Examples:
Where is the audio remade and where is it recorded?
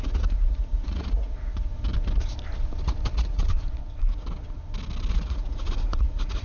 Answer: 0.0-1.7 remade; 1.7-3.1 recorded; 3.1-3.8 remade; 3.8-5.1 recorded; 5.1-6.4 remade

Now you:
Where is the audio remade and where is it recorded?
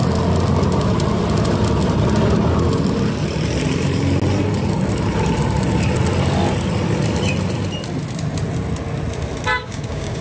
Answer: 0.0-9.5 recorded; 9.5-10.2 remade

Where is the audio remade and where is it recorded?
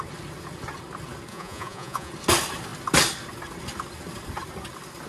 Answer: 0.0-1.3 recorded; 1.3-2.1 remade; 2.1-5.1 recorded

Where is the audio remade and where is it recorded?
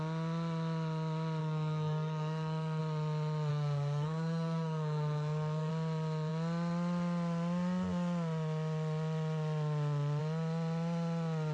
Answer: 0.0-1.4 recorded; 1.4-2.8 remade; 2.8-3.5 recorded; 3.5-5.7 remade; 5.7-11.5 recorded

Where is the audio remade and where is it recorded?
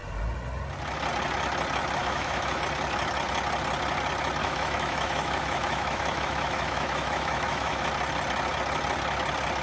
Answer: 0.0-2.0 recorded; 2.0-2.6 remade; 2.6-4.4 recorded; 4.4-7.9 remade; 7.9-9.6 recorded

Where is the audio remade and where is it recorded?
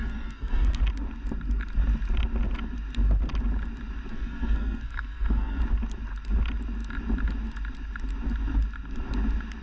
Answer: 0.0-0.8 remade; 0.8-4.1 recorded; 4.1-5.6 remade; 5.6-9.6 recorded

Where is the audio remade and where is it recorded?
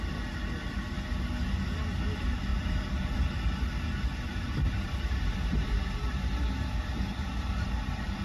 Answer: 0.0-2.5 recorded; 2.5-3.6 remade; 3.6-4.3 recorded; 4.3-8.2 remade